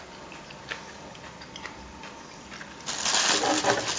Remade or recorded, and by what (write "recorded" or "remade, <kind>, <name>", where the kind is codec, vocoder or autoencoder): recorded